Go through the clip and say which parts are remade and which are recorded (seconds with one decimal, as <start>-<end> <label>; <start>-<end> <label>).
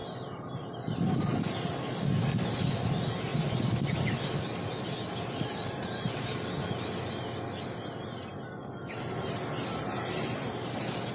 0.0-2.2 remade; 2.2-3.3 recorded; 3.3-4.3 remade; 4.3-8.3 recorded; 8.3-9.5 remade; 9.5-11.1 recorded